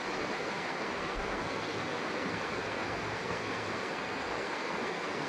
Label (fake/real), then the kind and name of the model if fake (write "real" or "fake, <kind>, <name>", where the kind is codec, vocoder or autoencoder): fake, codec, SNAC